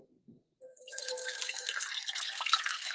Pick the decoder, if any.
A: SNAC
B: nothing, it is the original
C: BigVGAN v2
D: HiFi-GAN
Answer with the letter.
A